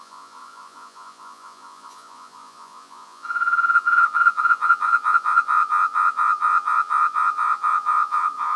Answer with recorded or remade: remade